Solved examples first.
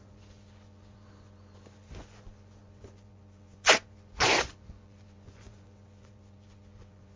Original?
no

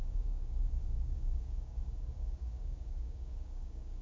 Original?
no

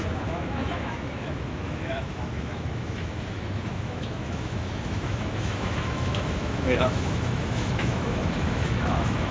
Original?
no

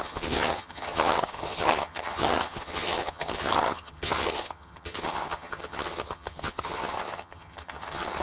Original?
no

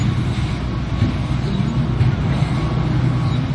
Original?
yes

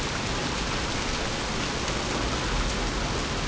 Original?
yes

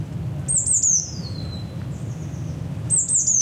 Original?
yes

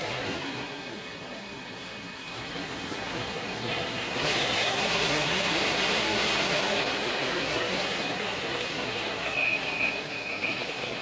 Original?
no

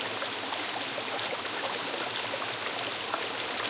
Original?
yes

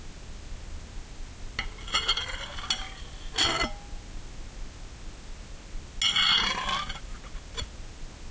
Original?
yes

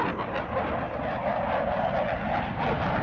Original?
yes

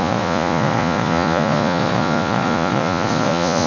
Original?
no